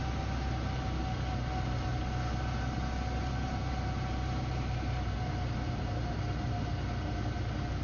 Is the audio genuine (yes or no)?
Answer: yes